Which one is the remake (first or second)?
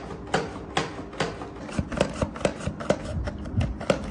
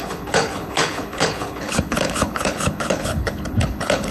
second